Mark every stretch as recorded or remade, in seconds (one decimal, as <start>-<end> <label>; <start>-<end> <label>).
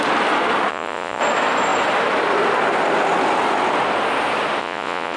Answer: 0.0-0.7 recorded; 0.7-1.2 remade; 1.2-4.6 recorded; 4.6-5.2 remade